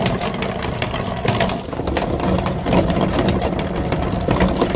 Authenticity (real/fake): real